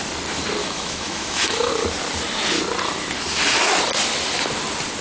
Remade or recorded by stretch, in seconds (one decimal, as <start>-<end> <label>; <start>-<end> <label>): 0.0-0.6 recorded; 0.6-1.7 remade; 1.7-5.0 recorded